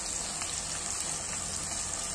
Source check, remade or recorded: recorded